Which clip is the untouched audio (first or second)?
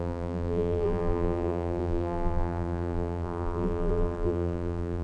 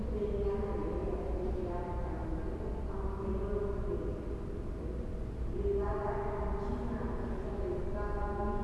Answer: second